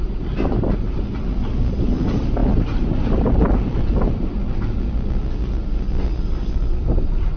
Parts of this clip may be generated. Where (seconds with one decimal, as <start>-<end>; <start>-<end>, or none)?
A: none